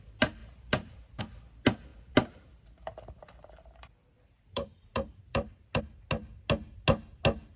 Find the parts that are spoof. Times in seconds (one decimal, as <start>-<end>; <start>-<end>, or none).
0.4-1.2; 1.9-5.8